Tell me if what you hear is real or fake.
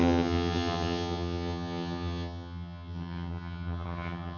fake